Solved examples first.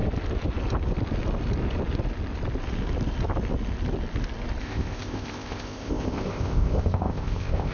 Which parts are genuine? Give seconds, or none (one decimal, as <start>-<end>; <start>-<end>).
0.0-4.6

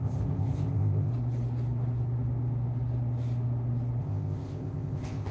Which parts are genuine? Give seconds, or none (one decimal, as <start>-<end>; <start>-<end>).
1.1-4.0

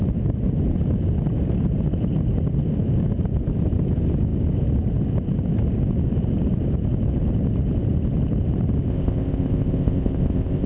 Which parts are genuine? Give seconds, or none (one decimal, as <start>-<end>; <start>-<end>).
0.0-8.9

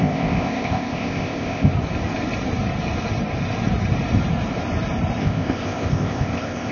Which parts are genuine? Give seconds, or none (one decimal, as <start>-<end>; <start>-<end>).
1.7-5.2